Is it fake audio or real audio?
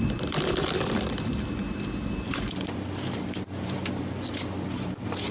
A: fake